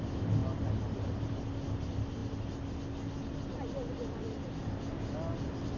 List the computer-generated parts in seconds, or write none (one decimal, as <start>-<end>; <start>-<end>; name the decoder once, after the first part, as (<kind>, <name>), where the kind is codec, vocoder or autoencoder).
none

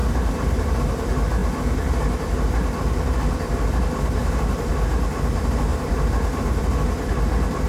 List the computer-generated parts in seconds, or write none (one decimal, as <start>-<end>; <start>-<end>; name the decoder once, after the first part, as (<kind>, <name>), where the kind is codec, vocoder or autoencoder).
0.0-0.8 (vocoder, BigVGAN v2); 4.2-4.7; 5.7-6.6

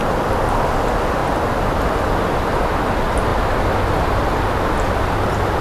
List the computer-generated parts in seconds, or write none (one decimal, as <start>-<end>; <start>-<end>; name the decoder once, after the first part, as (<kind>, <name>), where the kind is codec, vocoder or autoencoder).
none

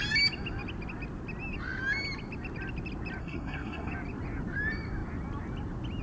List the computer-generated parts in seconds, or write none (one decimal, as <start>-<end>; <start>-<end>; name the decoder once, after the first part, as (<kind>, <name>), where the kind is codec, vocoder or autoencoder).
3.2-3.9 (codec, SNAC)

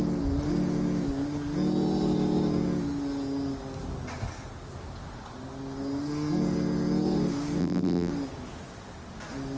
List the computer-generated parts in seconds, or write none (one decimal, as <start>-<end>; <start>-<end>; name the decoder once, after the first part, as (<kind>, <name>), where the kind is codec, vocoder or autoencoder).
7.6-8.1 (vocoder, BigVGAN v2)

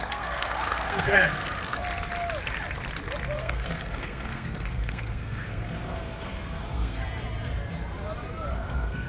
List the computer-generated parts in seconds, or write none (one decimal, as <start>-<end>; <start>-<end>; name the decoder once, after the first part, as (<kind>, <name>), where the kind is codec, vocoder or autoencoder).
0.0-1.8 (codec, SNAC); 3.4-7.0; 8.5-9.1

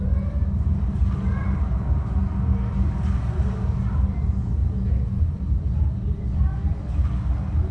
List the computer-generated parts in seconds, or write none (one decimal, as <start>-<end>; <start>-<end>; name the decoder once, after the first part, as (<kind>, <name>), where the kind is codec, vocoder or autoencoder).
none